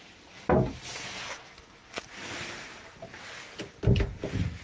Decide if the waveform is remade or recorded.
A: recorded